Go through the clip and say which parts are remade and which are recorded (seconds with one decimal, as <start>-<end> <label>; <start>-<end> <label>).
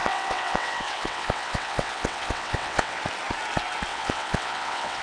0.0-3.0 remade; 3.0-3.9 recorded; 3.9-5.0 remade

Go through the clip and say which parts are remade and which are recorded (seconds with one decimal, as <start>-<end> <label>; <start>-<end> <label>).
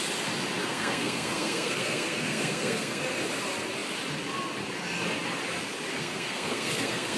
0.0-0.6 recorded; 0.6-3.0 remade; 3.0-5.9 recorded; 5.9-7.2 remade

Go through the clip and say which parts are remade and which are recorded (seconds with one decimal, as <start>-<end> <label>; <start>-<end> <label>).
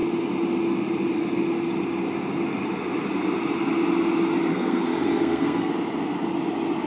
0.0-4.5 recorded; 4.5-5.7 remade; 5.7-6.9 recorded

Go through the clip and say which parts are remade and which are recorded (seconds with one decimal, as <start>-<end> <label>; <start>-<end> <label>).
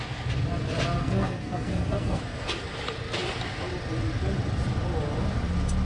0.0-1.0 recorded; 1.0-2.2 remade; 2.2-5.8 recorded